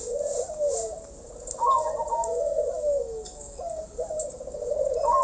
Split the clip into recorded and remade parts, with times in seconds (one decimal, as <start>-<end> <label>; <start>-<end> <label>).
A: 0.0-2.2 recorded; 2.2-3.6 remade; 3.6-5.2 recorded